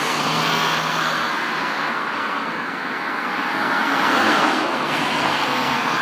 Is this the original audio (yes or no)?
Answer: no